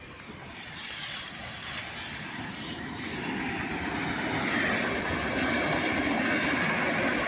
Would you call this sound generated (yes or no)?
yes